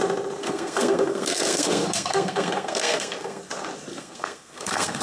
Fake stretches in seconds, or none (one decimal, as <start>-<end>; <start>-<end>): 0.4-3.4; 3.9-5.0